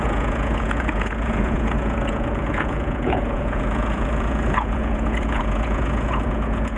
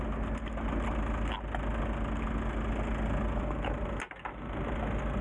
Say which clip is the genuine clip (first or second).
second